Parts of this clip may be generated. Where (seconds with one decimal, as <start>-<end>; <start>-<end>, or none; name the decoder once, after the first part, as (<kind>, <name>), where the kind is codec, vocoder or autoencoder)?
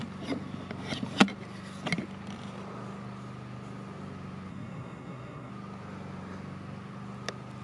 4.5-5.5 (codec, SNAC)